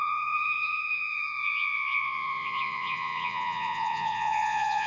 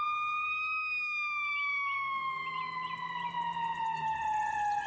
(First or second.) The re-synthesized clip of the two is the first